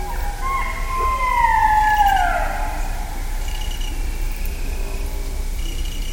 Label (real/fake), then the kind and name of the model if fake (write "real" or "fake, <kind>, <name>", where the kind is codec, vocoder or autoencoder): real